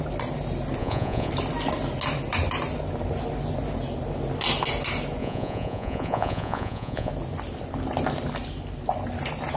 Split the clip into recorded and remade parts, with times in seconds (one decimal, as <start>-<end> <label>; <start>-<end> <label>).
0.0-0.8 recorded; 0.8-1.3 remade; 1.3-5.2 recorded; 5.2-7.1 remade; 7.1-9.6 recorded